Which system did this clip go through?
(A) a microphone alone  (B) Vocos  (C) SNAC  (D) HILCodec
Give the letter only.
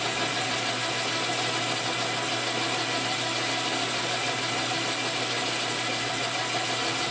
A